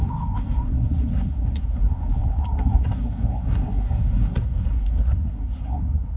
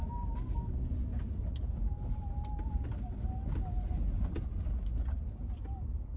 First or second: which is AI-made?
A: first